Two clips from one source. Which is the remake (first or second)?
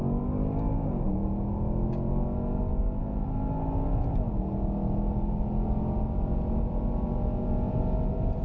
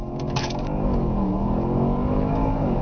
second